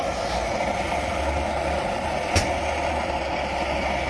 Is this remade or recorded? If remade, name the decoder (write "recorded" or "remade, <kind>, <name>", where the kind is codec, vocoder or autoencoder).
recorded